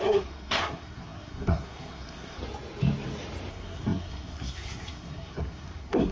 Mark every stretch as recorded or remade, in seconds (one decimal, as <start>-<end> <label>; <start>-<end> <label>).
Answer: 0.0-2.4 remade; 2.4-3.5 recorded; 3.5-6.1 remade